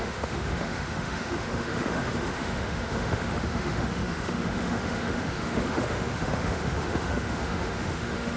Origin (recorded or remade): remade